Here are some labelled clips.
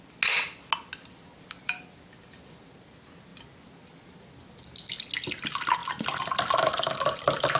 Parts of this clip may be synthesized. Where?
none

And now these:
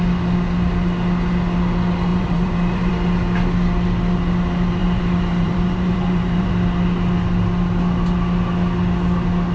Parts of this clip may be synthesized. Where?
2.1-2.9 (vocoder, BigVGAN v2); 4.8-6.5

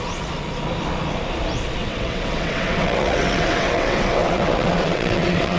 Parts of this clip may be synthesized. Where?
1.8-5.6 (vocoder, WaveNeXt)

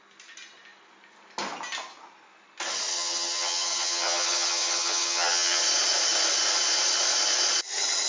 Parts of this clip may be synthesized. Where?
2.9-5.6 (vocoder, HiFi-GAN)

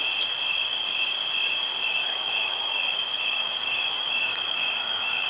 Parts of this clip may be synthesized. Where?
1.9-5.3 (autoencoder, DAC-VAE)

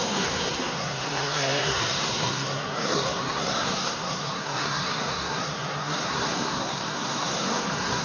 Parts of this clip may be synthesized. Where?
0.0-8.0 (codec, SNAC)